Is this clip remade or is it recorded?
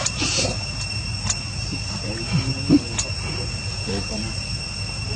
recorded